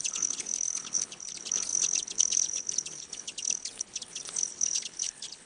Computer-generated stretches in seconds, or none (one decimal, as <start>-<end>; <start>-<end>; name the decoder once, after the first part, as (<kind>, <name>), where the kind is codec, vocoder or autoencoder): 0.0-5.5 (codec, HILCodec)